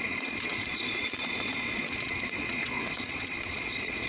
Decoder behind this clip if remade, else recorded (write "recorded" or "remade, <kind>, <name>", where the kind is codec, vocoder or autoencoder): remade, vocoder, Vocos